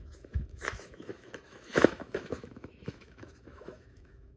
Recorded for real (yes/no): no